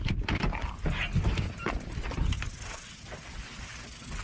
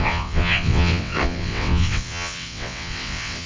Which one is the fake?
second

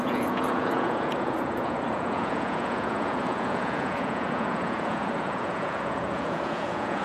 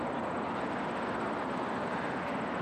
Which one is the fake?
first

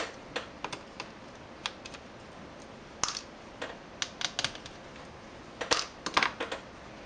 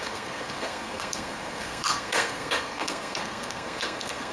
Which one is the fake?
second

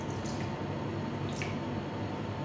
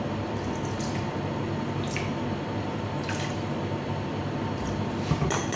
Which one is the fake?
second